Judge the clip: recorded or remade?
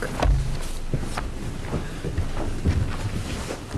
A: recorded